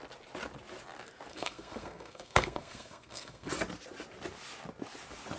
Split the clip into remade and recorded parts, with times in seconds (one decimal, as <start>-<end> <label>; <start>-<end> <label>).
0.0-1.3 recorded; 1.3-3.5 remade; 3.5-5.4 recorded